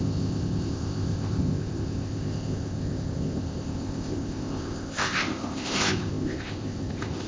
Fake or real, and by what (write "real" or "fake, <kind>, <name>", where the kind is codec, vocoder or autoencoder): fake, codec, ZipCodec